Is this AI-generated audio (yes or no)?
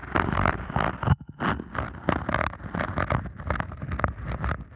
no